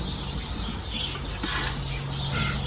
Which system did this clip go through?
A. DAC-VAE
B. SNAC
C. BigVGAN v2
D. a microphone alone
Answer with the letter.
D